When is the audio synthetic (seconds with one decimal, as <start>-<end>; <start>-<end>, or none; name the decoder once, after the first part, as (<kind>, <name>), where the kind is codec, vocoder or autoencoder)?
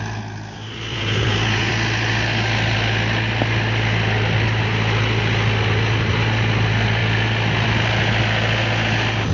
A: 0.9-1.7 (vocoder, Vocos)